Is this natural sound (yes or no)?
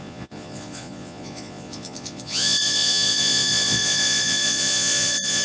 no